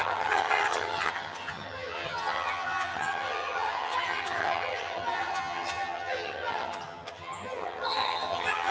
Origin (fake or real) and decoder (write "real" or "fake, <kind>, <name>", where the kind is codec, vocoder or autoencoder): fake, vocoder, HiFi-GAN